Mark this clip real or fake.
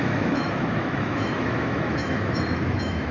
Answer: fake